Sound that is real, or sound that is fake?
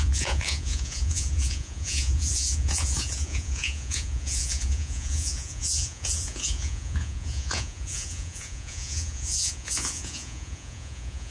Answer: fake